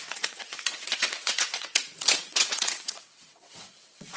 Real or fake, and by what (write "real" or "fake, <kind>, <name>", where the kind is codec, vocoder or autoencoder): fake, vocoder, WaveNeXt